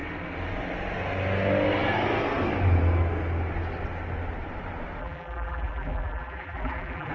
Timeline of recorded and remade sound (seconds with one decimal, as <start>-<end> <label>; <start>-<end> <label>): 0.0-5.0 recorded; 5.0-7.1 remade